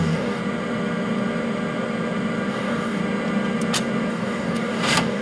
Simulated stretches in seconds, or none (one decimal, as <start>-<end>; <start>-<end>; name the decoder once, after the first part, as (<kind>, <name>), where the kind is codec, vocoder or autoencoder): 0.0-0.4 (codec, DAC); 2.5-3.0; 4.1-5.2